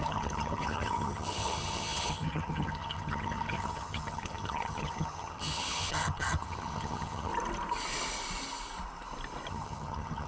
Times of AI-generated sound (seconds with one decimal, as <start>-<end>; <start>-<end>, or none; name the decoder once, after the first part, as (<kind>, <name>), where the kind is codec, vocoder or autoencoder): 0.0-7.3 (vocoder, HiFi-GAN); 9.5-10.3